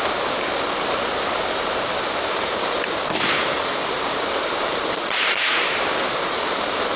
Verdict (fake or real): fake